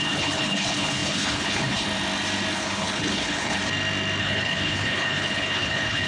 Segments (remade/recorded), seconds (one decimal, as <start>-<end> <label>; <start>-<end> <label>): 0.0-1.9 remade; 1.9-2.5 recorded; 2.5-3.6 remade; 3.6-4.2 recorded; 4.2-6.1 remade